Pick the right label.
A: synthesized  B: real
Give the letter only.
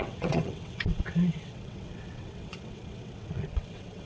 A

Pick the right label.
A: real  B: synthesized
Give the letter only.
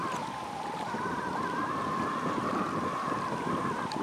A